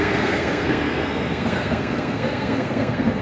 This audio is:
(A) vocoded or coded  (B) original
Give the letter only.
A